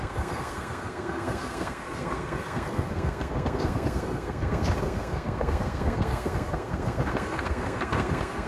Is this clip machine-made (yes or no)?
yes